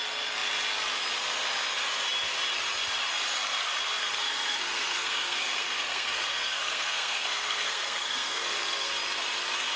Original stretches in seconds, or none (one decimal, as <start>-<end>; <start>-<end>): 0.0-4.0; 8.9-9.8

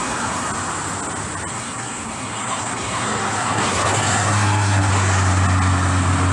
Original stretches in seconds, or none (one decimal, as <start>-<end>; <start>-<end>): 0.5-1.5; 4.9-6.3

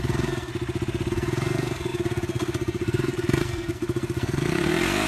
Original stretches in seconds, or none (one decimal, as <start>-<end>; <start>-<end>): 0.5-1.1

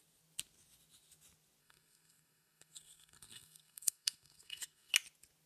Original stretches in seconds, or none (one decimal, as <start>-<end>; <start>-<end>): 0.0-1.6; 4.9-5.5

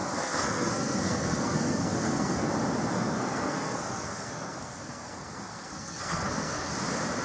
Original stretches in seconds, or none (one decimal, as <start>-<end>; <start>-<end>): 2.5-2.9; 6.7-7.2

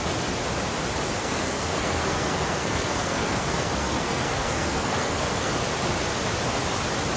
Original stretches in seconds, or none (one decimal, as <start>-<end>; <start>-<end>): 0.0-1.2; 5.5-7.2